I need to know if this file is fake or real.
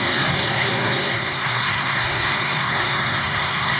fake